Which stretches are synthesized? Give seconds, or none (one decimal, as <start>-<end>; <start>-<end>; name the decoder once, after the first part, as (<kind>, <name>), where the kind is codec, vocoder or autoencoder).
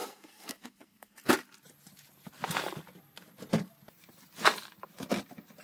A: 0.0-1.2 (codec, SNAC)